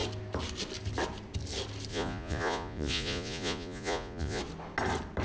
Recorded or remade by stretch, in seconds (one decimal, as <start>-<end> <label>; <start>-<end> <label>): 0.0-1.9 recorded; 1.9-4.4 remade; 4.4-5.2 recorded